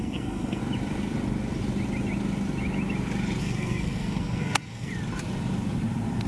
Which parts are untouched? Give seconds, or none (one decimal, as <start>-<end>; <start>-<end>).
0.6-3.4; 4.9-6.3